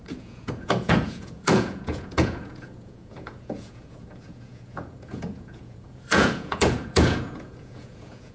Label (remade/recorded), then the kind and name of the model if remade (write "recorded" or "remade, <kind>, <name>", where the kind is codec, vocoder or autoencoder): remade, vocoder, Vocos